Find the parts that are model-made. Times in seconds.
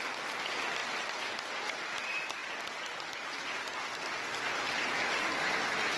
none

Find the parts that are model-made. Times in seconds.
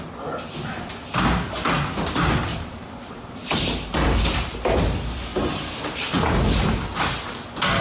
2.5-3.6 (vocoder, BigVGAN v2); 5.3-5.8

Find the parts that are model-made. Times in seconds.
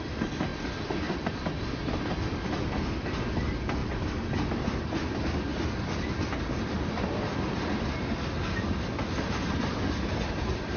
none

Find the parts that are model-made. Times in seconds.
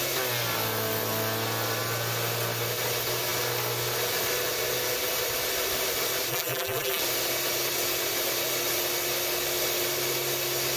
6.3-7.0 (vocoder, BigVGAN v2)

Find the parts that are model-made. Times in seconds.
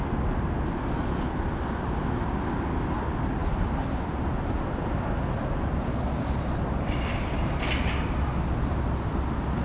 3.4-5.1 (vocoder, BigVGAN v2)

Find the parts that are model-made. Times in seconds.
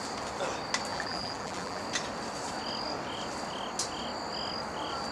0.9-1.8 (vocoder, BigVGAN v2)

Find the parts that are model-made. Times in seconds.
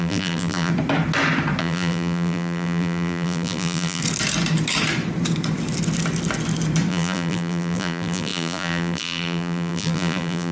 0.0-0.7 (vocoder, BigVGAN v2); 1.6-4.0; 6.9-10.5